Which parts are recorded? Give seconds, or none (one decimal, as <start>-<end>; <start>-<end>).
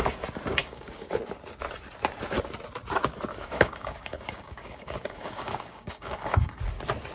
0.0-0.6; 1.1-3.3; 6.5-7.1